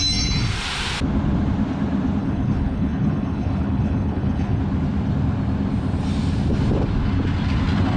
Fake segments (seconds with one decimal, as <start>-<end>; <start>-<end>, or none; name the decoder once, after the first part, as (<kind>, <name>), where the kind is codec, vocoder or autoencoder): 2.2-4.6 (codec, HILCodec)